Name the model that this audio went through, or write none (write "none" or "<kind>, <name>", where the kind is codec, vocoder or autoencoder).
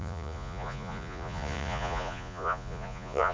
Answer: vocoder, Vocos